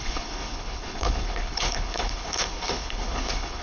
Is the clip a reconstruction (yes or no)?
yes